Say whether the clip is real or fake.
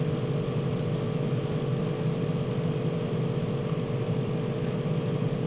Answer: fake